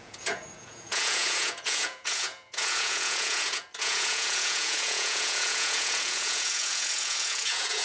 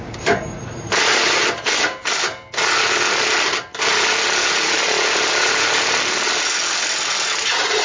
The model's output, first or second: first